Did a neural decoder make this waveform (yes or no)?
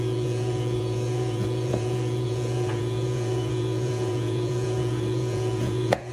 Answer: yes